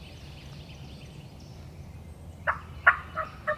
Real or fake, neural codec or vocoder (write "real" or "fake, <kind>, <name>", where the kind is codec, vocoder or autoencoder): real